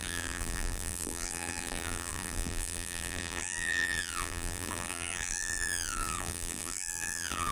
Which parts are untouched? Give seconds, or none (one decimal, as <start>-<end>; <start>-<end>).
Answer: none